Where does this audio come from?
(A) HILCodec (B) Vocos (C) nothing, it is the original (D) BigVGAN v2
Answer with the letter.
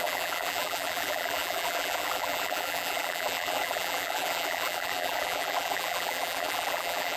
D